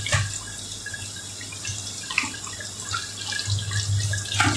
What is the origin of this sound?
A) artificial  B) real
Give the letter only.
B